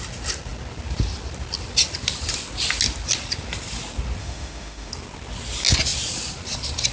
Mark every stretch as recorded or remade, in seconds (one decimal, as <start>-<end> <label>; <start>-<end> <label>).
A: 0.0-4.2 recorded; 4.2-4.9 remade; 4.9-6.9 recorded